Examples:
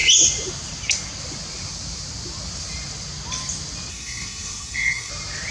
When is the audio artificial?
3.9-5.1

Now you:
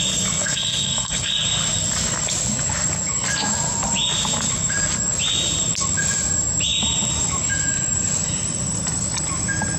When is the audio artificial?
0.4-1.3

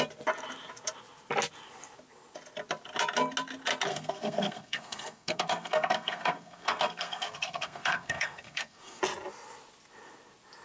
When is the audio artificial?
3.9-9.0

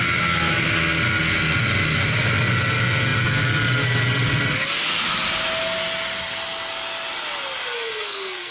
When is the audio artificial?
7.7-8.5

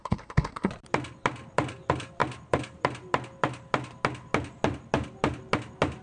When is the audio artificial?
0.0-0.7

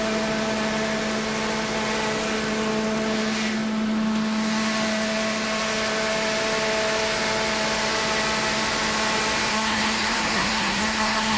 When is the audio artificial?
9.5-11.4

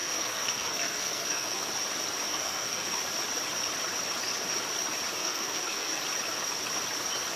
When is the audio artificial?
0.0-1.7; 2.3-3.0; 5.2-6.0

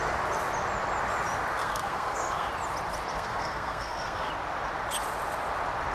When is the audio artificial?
1.6-2.5; 3.1-4.3